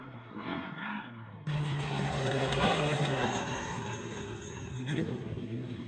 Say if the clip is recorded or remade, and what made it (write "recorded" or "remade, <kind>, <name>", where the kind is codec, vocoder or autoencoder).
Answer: remade, codec, SNAC